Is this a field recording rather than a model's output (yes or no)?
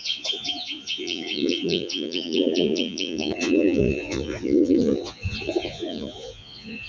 no